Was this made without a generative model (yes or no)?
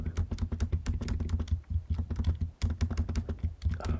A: yes